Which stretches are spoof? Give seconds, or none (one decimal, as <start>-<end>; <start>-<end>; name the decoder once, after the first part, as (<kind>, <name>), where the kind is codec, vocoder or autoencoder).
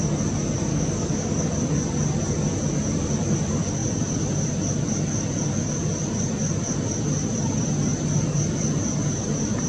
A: 0.7-1.5 (codec, DAC)